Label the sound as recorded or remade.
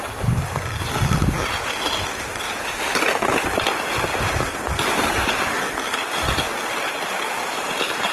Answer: recorded